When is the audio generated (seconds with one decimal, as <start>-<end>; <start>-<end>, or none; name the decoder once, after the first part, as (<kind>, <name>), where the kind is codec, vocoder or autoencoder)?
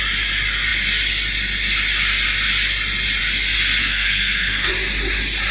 3.8-4.7 (codec, SNAC)